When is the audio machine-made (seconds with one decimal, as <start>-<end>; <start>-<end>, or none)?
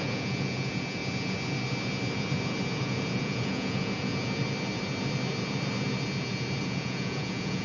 0.0-1.0; 2.8-4.1; 6.6-7.6